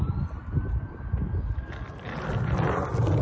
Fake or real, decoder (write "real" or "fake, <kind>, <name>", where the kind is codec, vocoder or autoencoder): real